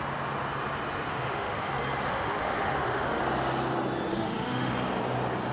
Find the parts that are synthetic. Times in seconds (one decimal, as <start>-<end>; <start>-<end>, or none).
1.1-1.7; 2.1-3.2; 4.1-4.7